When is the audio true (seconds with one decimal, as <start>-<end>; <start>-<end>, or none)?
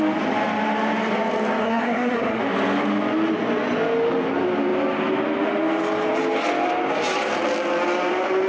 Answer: 0.0-1.6; 2.4-8.5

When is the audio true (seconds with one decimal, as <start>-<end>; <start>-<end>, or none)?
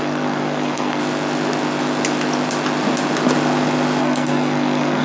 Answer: 1.0-4.0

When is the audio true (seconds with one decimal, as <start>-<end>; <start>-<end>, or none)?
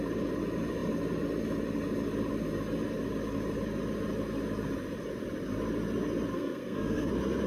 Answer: 0.0-6.3; 7.1-7.5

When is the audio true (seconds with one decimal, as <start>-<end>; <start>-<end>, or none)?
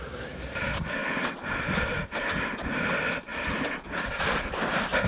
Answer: 0.0-5.1